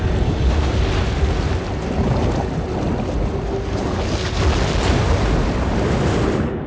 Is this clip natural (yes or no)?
yes